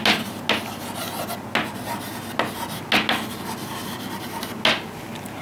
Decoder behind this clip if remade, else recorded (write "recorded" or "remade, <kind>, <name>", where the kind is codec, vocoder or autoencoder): recorded